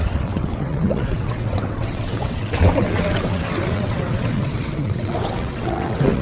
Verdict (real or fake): fake